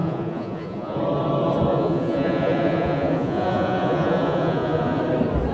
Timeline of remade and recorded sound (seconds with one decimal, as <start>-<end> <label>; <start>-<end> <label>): 0.0-1.0 remade; 1.0-1.7 recorded; 1.7-5.0 remade; 5.0-5.5 recorded